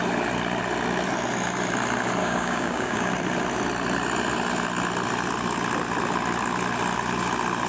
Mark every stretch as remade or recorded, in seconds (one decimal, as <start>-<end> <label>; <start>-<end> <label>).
0.0-2.2 recorded; 2.2-3.1 remade; 3.1-7.7 recorded